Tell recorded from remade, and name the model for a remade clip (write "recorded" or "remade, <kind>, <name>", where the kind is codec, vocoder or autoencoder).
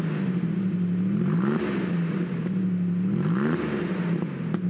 recorded